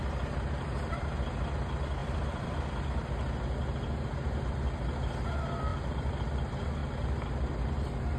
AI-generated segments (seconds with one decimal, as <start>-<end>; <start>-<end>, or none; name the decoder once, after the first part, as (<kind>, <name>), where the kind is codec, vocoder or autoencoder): 2.0-2.6 (vocoder, BigVGAN v2); 5.7-6.3; 6.8-7.7